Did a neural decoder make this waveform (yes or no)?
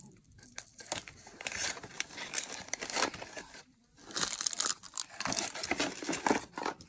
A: yes